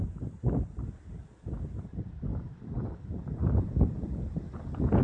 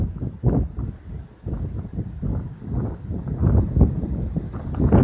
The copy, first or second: first